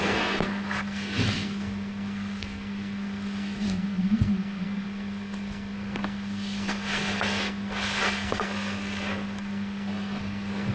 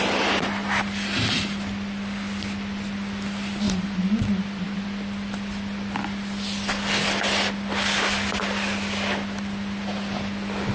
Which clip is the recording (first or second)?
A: second